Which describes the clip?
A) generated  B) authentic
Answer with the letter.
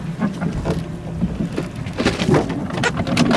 B